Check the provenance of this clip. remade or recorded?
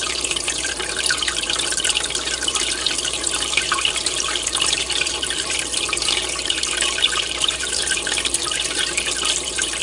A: remade